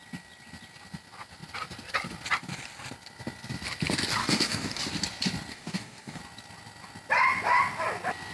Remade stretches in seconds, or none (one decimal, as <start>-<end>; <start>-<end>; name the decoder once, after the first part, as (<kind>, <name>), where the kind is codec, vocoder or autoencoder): 4.2-4.8 (codec, DAC); 5.5-6.2